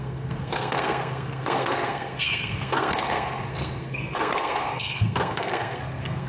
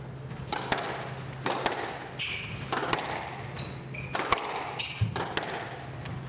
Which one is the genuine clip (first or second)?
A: second